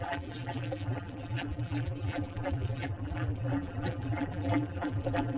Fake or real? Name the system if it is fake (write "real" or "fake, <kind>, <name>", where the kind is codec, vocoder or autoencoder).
fake, vocoder, BigVGAN v2